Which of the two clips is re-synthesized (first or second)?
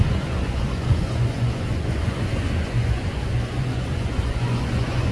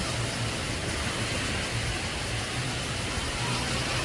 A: first